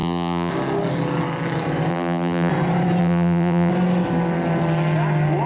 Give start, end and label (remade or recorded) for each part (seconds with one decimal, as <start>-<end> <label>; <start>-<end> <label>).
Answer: 0.0-0.5 remade; 0.5-1.9 recorded; 1.9-2.5 remade; 2.5-3.0 recorded; 3.0-3.7 remade; 3.7-5.5 recorded

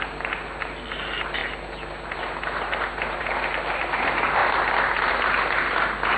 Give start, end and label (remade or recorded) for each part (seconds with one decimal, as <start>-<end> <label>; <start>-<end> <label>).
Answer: 0.0-6.2 recorded

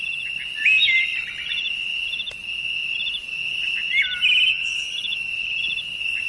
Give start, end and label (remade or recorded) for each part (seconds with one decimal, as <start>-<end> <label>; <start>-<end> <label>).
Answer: 0.0-4.5 recorded; 4.5-5.3 remade; 5.3-6.3 recorded

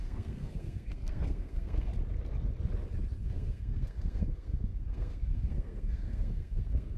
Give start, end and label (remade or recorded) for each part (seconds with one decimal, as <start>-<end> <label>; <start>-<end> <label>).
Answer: 0.0-1.9 remade; 1.9-3.2 recorded; 3.2-7.0 remade